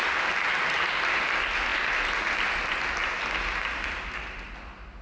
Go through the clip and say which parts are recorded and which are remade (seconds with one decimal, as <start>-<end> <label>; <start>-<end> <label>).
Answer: 0.0-5.0 recorded